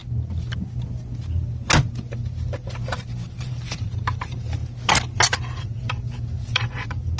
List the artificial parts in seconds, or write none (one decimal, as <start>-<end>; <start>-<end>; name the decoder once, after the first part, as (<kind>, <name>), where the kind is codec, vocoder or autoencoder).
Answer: 3.4-4.6 (vocoder, BigVGAN v2); 5.5-7.2